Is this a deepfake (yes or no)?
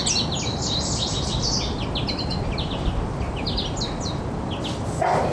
no